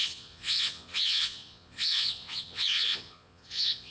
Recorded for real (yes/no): no